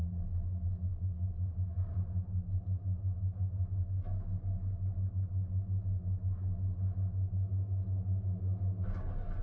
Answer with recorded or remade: recorded